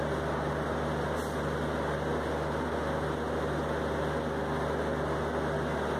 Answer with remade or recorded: recorded